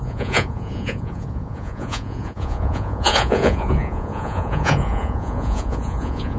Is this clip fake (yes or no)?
yes